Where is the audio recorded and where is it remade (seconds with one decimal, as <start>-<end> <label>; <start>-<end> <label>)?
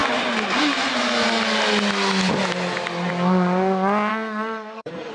0.0-4.1 recorded; 4.1-5.1 remade